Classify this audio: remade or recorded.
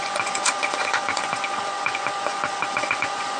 remade